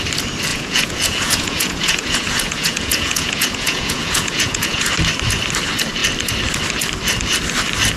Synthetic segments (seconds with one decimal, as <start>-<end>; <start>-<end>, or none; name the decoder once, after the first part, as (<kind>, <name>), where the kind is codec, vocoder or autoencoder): 0.5-4.9 (vocoder, Vocos)